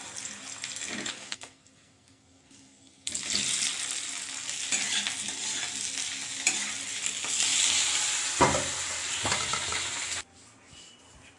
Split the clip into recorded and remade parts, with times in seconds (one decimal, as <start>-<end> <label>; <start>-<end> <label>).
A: 0.0-1.1 recorded; 1.1-3.1 remade; 3.1-11.4 recorded